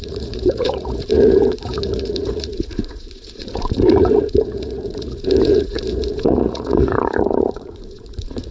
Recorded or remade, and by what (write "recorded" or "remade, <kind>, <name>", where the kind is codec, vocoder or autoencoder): remade, vocoder, Vocos